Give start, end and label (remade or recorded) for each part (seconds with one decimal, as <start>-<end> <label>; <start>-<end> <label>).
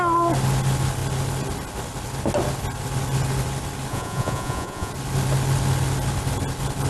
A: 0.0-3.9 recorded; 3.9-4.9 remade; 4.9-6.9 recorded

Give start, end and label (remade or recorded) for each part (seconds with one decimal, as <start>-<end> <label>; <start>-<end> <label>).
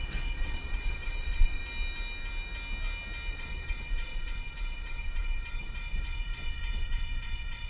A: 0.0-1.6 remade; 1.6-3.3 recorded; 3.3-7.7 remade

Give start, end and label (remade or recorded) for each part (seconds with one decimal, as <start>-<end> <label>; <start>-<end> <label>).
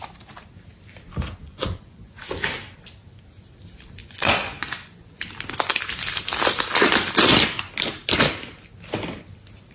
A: 0.0-1.4 recorded; 1.4-2.2 remade; 2.2-4.0 recorded; 4.0-5.2 remade; 5.2-9.7 recorded